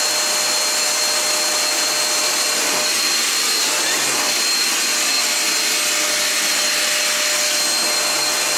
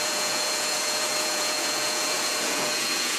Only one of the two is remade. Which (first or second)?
second